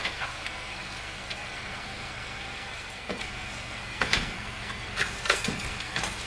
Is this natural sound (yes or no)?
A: no